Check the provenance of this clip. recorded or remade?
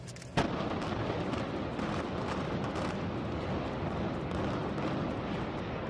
recorded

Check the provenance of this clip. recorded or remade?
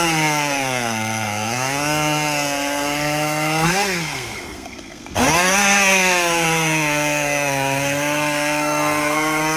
remade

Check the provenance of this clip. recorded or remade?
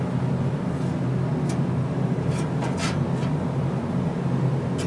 recorded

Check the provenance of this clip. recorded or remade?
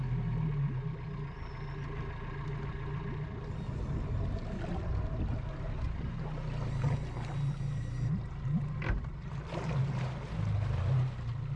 recorded